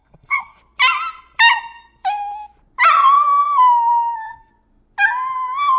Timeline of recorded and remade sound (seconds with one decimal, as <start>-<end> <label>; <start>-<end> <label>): 0.0-0.6 remade; 0.6-3.4 recorded; 3.4-4.5 remade; 4.5-5.8 recorded